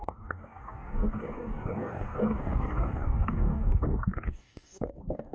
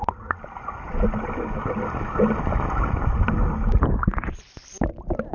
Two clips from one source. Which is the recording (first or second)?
second